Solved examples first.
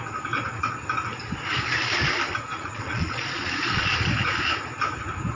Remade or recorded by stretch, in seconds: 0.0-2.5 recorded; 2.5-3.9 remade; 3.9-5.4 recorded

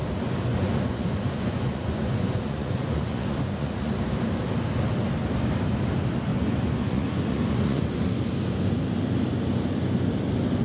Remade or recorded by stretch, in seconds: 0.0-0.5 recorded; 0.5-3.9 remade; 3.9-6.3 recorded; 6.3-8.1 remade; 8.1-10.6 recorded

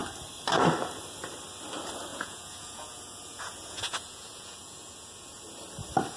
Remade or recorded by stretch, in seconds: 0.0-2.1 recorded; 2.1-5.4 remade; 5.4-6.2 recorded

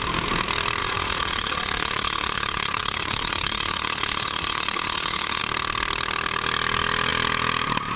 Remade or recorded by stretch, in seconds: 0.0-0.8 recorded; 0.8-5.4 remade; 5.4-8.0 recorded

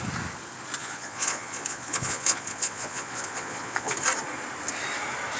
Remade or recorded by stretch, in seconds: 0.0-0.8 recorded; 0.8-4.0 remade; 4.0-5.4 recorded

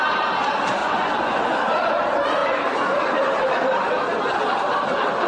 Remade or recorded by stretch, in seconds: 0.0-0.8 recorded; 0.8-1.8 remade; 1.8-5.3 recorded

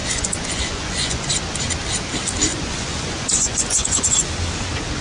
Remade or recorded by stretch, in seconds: 0.0-1.3 remade; 1.3-2.5 recorded; 2.5-4.3 remade; 4.3-5.0 recorded

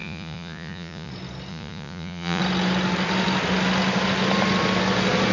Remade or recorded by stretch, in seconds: 0.0-1.1 remade; 1.1-1.5 recorded; 1.5-2.4 remade; 2.4-5.3 recorded